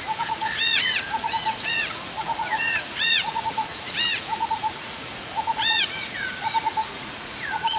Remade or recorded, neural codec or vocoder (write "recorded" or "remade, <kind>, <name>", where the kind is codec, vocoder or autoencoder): remade, vocoder, Vocos